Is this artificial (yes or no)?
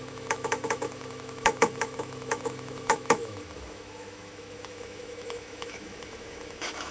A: yes